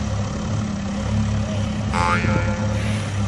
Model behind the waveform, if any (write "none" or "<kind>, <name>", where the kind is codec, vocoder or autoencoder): none